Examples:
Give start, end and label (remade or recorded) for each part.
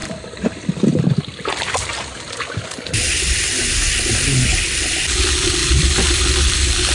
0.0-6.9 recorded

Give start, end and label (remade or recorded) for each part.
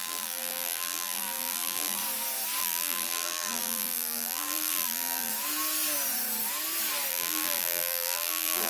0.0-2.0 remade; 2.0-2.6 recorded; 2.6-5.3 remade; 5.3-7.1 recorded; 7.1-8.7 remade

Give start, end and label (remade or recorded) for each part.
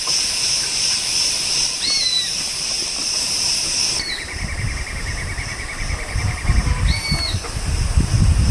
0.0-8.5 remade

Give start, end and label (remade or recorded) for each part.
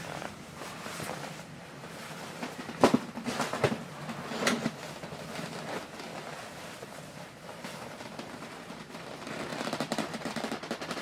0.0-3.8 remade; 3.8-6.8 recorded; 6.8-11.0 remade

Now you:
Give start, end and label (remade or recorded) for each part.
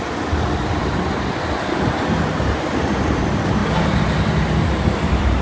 0.0-3.6 remade; 3.6-4.6 recorded; 4.6-5.4 remade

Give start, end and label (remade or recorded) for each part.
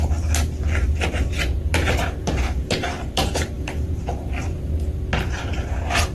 0.0-1.7 recorded; 1.7-4.6 remade; 4.6-6.1 recorded